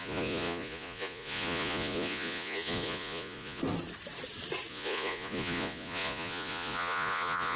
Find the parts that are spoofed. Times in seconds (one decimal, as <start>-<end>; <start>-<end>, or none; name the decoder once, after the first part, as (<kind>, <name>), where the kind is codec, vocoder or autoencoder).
0.0-3.6 (vocoder, Vocos); 4.7-7.6